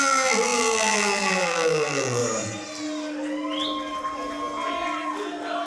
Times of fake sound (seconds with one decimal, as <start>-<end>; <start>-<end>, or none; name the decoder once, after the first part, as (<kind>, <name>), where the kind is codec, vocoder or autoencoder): 0.0-2.2 (vocoder, BigVGAN v2)